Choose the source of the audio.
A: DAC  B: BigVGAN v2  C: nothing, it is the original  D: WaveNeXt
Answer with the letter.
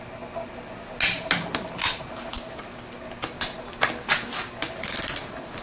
C